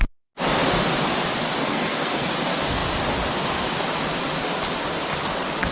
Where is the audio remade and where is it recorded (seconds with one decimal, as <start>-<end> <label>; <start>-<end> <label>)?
0.0-1.6 recorded; 1.6-2.3 remade; 2.3-5.7 recorded